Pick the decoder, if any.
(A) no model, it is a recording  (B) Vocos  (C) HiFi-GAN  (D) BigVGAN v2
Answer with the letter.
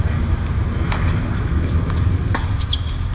A